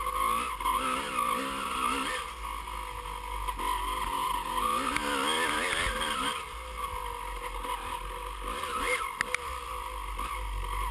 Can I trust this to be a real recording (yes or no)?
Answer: yes